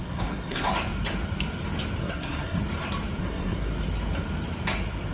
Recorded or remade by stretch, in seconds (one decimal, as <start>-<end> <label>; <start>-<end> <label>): 0.0-0.7 remade; 0.7-2.0 recorded; 2.0-2.6 remade; 2.6-3.2 recorded; 3.2-3.7 remade; 3.7-5.1 recorded